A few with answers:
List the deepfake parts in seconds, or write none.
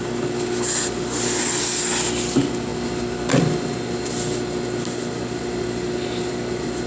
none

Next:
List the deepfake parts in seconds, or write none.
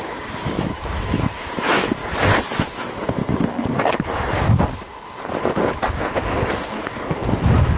0.0-2.0 (autoencoder, DAC-VAE); 2.6-3.2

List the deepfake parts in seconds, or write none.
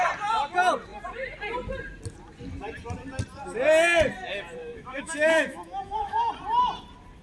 4.6-6.3 (autoencoder, DAC-VAE)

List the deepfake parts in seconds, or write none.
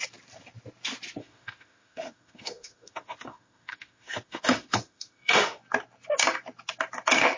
1.2-5.6 (autoencoder, DAC-VAE)